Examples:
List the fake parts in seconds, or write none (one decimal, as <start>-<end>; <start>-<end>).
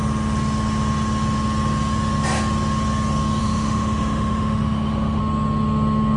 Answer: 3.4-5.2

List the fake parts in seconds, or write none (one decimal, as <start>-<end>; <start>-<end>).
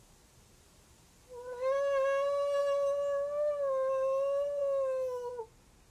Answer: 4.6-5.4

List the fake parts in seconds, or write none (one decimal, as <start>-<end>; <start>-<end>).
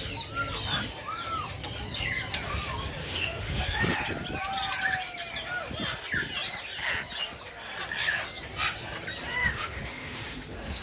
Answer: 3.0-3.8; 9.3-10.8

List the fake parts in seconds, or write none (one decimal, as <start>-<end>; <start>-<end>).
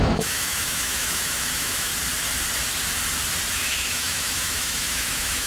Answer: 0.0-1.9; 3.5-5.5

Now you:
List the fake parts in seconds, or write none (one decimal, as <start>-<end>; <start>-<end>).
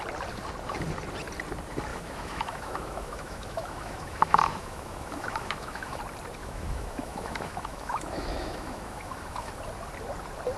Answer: 1.9-6.0; 6.4-9.5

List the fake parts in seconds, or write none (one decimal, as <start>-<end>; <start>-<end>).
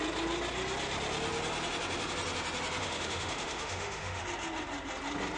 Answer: 2.8-4.2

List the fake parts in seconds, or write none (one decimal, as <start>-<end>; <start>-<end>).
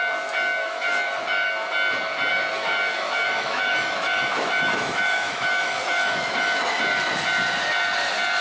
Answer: 0.6-1.5; 2.3-6.7